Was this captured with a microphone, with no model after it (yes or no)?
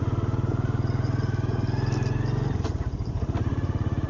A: yes